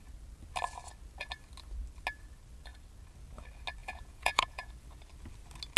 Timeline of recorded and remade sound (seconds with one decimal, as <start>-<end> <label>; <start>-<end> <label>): 0.0-3.8 recorded; 3.8-4.7 remade; 4.7-5.8 recorded